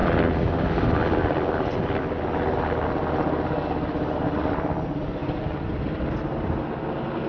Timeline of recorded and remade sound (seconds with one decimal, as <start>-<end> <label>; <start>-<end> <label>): 0.0-7.3 recorded